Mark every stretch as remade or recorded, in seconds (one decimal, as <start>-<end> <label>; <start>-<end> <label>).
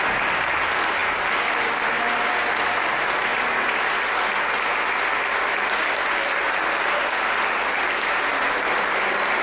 0.0-1.0 recorded; 1.0-2.0 remade; 2.0-3.3 recorded; 3.3-4.1 remade; 4.1-9.4 recorded